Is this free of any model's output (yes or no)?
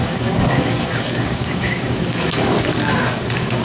no